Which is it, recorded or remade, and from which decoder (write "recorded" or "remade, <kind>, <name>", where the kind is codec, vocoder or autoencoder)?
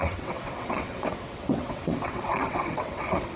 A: remade, vocoder, WaveNeXt